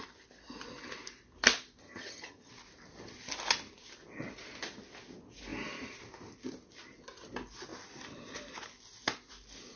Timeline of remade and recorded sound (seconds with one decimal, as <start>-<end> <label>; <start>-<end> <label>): 0.0-1.8 recorded; 1.8-2.5 remade; 2.5-9.8 recorded